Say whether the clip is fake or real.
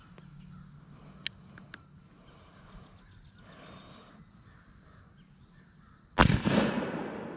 real